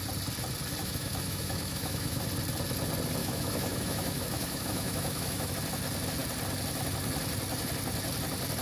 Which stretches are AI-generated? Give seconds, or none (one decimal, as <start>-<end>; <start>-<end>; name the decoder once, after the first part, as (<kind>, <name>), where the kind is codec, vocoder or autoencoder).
0.8-2.2 (autoencoder, DAC-VAE); 3.2-5.5

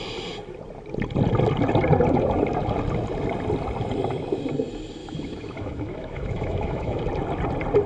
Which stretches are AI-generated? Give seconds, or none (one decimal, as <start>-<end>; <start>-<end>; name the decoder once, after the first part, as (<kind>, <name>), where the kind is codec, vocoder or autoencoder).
5.0-7.0 (autoencoder, DAC-VAE)

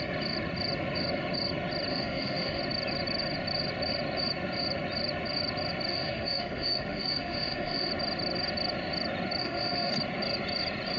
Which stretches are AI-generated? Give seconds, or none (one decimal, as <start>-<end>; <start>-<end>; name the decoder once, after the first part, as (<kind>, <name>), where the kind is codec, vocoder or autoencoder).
1.9-2.6 (autoencoder, DAC-VAE); 5.9-7.9; 9.4-9.9